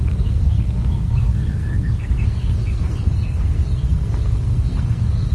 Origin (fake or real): fake